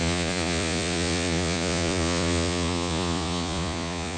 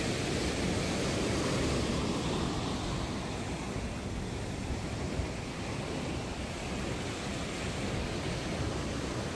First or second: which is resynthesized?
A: first